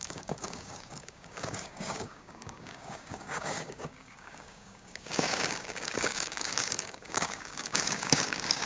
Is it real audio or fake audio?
fake